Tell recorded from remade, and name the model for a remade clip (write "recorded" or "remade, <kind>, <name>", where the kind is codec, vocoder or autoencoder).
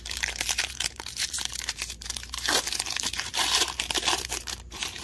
remade, vocoder, BigVGAN v2